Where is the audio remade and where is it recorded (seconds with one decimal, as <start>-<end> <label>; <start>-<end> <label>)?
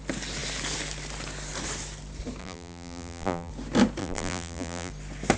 0.0-2.4 recorded; 2.4-3.5 remade; 3.5-4.0 recorded; 4.0-4.9 remade; 4.9-5.4 recorded